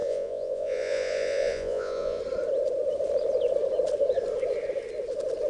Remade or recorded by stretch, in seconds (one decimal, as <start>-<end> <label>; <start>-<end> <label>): 0.0-2.2 remade; 2.2-5.5 recorded